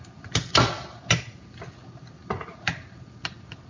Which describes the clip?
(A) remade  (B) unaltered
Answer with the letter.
B